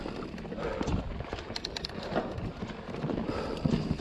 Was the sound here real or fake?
real